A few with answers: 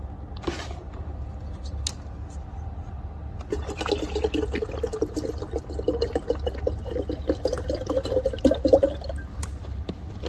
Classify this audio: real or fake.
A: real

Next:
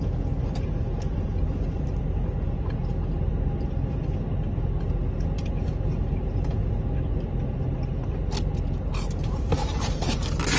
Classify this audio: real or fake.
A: real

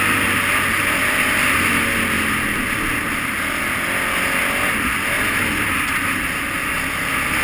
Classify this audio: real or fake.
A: real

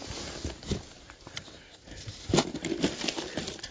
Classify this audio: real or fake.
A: real